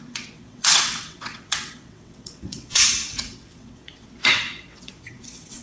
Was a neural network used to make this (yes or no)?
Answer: yes